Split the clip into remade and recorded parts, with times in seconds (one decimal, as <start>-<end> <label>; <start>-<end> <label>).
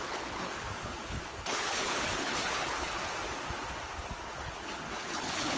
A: 0.0-3.0 remade; 3.0-4.2 recorded; 4.2-5.6 remade